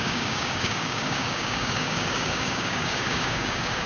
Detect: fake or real fake